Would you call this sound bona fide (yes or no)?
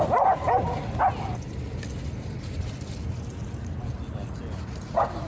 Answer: yes